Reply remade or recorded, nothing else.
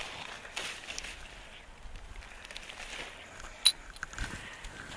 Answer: recorded